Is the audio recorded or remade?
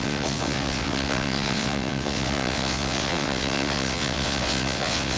remade